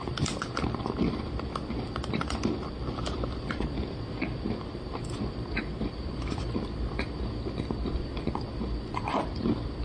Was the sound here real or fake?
fake